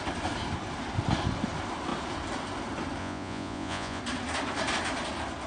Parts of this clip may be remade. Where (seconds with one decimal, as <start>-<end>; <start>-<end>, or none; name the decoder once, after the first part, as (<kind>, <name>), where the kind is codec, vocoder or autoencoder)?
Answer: 3.0-4.0 (vocoder, Vocos)